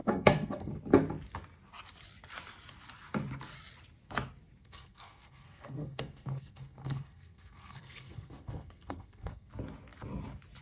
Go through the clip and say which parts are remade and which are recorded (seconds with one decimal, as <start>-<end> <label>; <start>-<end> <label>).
0.0-0.7 remade; 0.7-4.6 recorded; 4.6-9.5 remade; 9.5-10.6 recorded